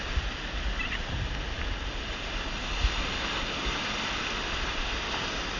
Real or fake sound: real